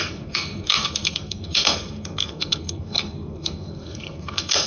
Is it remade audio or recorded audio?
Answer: remade